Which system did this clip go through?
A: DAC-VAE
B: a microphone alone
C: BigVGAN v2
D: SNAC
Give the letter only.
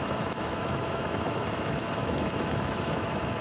A